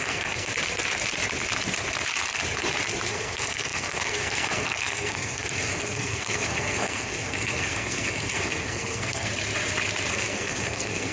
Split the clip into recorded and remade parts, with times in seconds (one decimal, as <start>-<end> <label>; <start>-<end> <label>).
0.0-0.5 remade; 0.5-3.1 recorded; 3.1-9.3 remade; 9.3-10.1 recorded; 10.1-11.1 remade